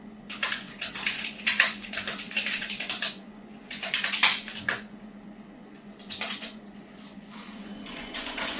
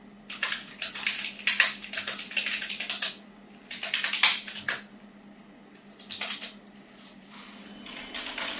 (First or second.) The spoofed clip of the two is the first